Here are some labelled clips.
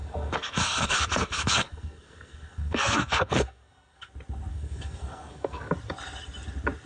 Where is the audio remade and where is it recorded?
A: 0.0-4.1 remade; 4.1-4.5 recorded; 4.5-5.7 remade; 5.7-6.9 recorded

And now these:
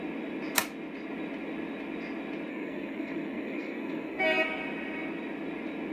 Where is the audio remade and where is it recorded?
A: 0.0-2.5 recorded; 2.5-4.2 remade; 4.2-5.9 recorded

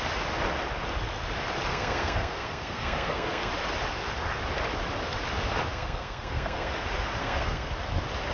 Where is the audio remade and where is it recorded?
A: 0.0-1.7 recorded; 1.7-3.5 remade; 3.5-5.7 recorded; 5.7-6.7 remade; 6.7-7.2 recorded; 7.2-7.7 remade; 7.7-8.3 recorded